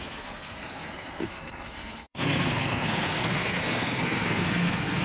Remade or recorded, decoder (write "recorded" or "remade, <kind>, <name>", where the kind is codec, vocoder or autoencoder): remade, codec, SNAC